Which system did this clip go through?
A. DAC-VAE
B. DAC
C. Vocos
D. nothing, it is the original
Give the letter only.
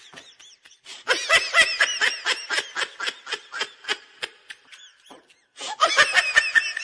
D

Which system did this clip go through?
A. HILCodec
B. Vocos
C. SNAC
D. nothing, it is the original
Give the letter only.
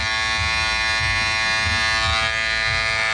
D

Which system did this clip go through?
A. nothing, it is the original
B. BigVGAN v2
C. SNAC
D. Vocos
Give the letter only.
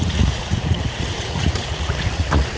D